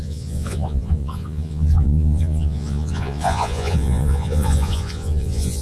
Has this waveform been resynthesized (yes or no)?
yes